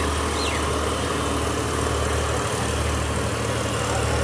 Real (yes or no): yes